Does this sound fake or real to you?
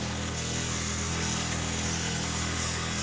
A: fake